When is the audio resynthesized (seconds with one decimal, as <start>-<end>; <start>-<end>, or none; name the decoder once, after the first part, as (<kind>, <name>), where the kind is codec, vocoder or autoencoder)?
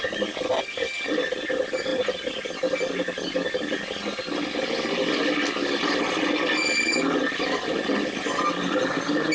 none